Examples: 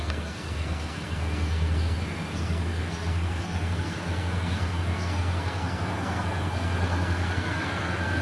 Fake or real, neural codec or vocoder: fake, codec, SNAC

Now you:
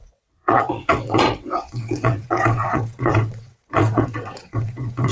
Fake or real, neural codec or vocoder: fake, vocoder, WaveNeXt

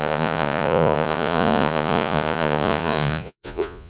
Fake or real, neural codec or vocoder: fake, vocoder, Vocos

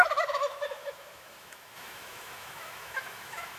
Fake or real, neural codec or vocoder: fake, autoencoder, DAC-VAE